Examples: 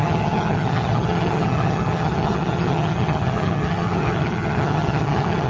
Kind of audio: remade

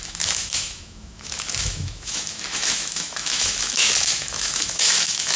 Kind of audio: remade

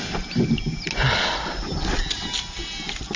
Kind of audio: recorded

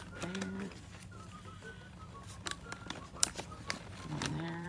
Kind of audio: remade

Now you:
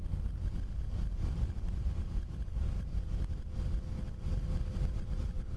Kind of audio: recorded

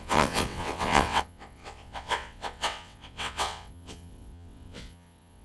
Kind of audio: remade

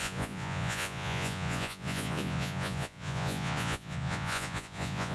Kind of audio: remade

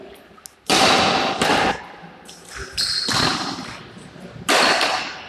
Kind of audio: recorded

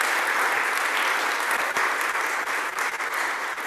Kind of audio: recorded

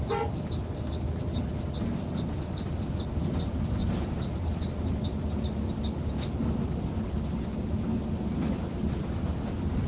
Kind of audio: recorded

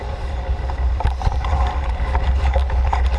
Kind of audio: recorded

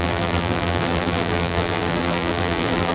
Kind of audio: remade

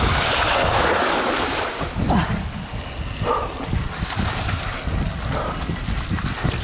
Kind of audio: recorded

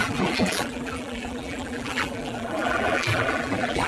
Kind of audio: remade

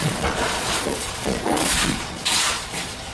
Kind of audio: remade